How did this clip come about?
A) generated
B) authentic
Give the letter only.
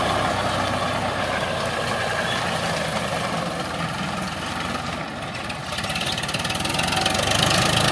B